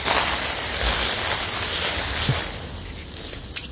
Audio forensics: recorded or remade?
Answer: recorded